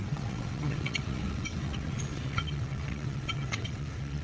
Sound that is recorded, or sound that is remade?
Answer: remade